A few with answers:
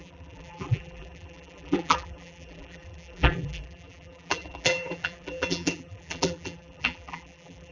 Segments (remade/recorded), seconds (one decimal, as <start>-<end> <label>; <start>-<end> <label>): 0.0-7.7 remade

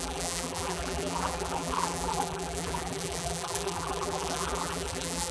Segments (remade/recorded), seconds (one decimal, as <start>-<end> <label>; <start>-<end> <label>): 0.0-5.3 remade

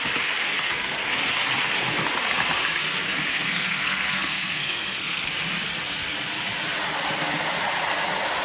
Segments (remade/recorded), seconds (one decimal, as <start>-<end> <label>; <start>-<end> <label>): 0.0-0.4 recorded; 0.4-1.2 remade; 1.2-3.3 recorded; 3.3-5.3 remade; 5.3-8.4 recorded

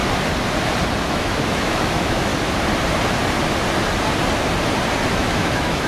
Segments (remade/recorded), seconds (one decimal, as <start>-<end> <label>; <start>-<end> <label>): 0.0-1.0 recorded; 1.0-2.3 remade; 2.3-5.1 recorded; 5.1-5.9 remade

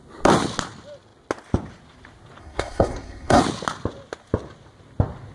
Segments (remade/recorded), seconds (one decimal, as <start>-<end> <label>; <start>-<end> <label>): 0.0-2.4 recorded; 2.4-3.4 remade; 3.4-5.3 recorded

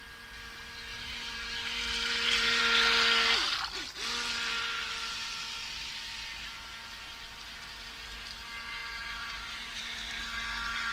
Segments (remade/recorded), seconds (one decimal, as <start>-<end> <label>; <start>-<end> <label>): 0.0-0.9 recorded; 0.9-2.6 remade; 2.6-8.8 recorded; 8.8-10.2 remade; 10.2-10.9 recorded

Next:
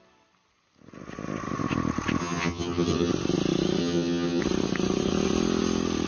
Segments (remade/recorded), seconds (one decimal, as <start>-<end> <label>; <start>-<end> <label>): 0.0-2.2 recorded; 2.2-3.1 remade; 3.1-3.8 recorded; 3.8-4.4 remade; 4.4-6.1 recorded